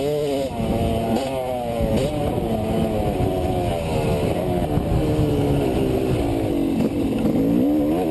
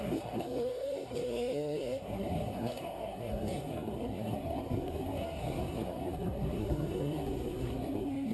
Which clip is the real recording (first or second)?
first